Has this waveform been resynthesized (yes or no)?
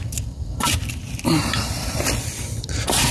yes